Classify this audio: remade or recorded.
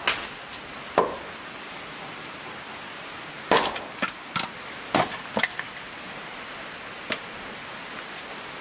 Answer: recorded